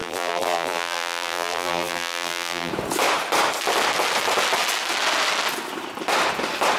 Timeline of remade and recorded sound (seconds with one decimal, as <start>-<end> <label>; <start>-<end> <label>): 0.0-2.7 remade; 2.7-6.8 recorded